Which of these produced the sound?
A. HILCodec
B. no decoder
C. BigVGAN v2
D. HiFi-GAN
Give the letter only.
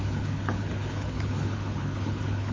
A